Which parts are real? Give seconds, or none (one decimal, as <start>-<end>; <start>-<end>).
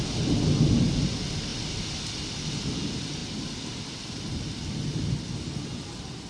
0.0-6.3